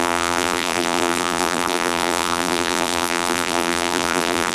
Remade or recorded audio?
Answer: remade